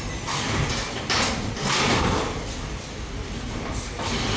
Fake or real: real